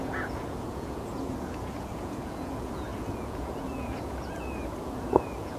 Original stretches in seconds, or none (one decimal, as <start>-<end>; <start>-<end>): none